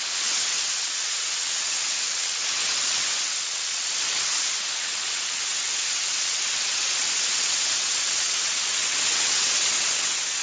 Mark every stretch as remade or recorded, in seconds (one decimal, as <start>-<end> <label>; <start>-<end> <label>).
0.0-10.4 remade